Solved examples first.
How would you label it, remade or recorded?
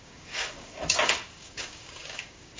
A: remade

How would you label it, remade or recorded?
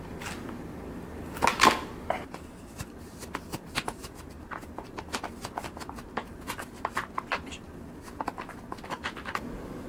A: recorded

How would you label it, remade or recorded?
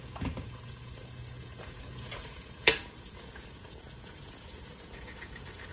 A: remade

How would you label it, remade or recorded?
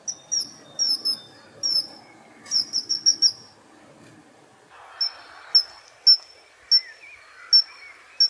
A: recorded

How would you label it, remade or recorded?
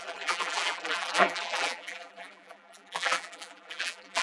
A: remade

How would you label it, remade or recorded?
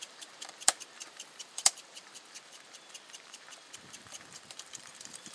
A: remade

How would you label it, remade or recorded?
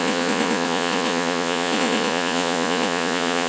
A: remade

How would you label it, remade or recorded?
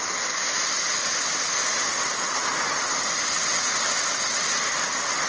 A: recorded